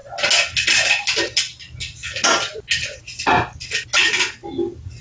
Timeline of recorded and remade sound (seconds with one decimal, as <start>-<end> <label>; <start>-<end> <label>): 0.0-5.0 recorded